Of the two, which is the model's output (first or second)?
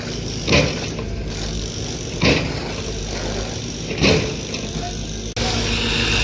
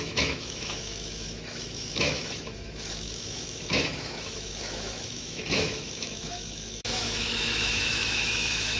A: second